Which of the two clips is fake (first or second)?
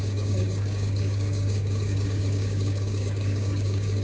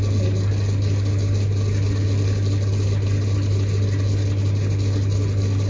first